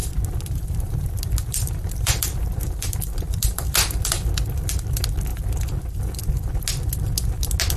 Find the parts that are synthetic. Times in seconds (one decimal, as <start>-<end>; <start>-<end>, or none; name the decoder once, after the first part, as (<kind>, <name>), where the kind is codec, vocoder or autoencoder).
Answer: 0.0-4.7 (vocoder, BigVGAN v2)